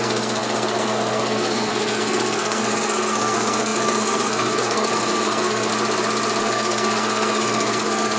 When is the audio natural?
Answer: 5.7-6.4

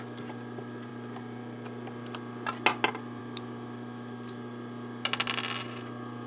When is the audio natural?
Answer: 0.0-6.3